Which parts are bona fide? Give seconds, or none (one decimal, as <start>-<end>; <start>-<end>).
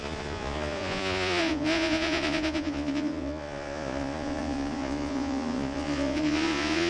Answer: none